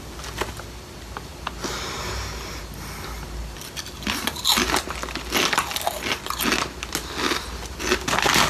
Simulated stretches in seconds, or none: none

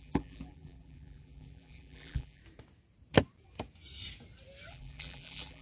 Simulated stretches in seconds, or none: 0.0-2.4 (vocoder, BigVGAN v2); 4.7-5.6

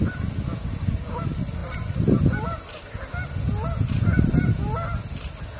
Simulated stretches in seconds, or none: none

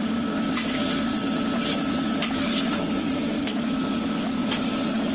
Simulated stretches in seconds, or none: 4.4-5.1 (vocoder, BigVGAN v2)

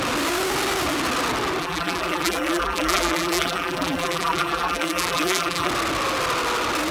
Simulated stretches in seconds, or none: 1.6-5.7 (vocoder, BigVGAN v2)

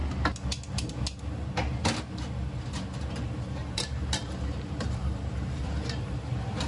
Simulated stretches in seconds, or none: 3.6-6.3 (vocoder, BigVGAN v2)

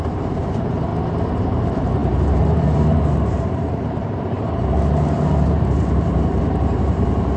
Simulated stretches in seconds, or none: 0.0-0.9 (vocoder, BigVGAN v2); 1.4-7.4

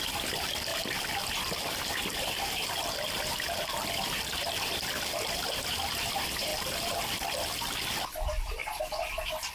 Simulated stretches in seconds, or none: 0.7-4.9 (vocoder, BigVGAN v2); 6.5-7.8; 8.6-9.5